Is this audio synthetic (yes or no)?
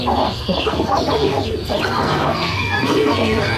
yes